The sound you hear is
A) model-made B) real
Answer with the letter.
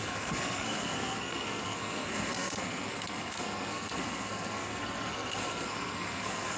A